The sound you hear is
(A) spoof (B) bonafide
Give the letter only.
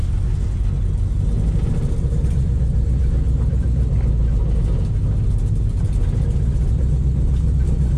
B